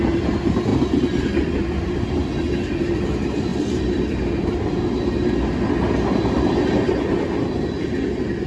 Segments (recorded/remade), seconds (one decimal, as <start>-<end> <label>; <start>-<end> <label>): 0.0-8.5 recorded